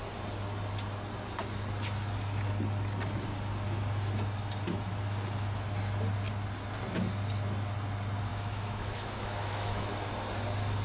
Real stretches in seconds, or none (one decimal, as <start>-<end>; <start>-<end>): 0.0-8.3; 9.9-10.8

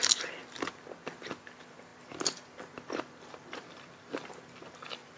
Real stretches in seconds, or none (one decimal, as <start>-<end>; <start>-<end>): 0.0-5.2

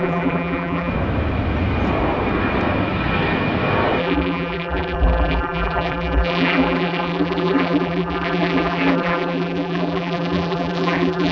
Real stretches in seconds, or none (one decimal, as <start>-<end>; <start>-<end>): 0.9-4.0

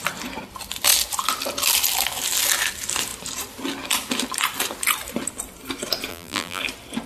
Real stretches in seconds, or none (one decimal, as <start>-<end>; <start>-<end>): 0.0-6.1; 6.6-7.1

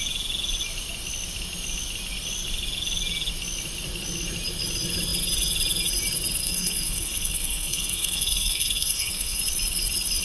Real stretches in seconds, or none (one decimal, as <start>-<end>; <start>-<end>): 0.0-6.4; 9.4-10.2

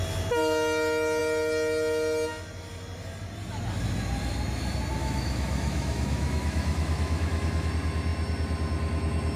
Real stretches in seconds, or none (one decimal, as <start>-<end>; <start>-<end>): 0.0-5.0; 7.7-9.4

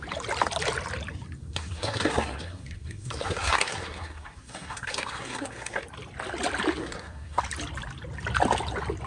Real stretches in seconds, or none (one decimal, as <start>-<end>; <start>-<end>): 0.0-1.4; 5.8-6.8; 7.4-9.1